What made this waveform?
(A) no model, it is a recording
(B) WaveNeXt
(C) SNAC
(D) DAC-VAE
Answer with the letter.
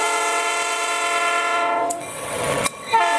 B